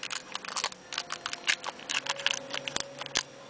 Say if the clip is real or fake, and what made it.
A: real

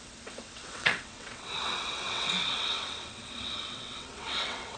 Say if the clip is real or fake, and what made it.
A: fake, vocoder, WaveNeXt